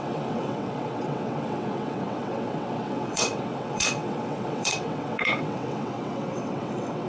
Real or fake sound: fake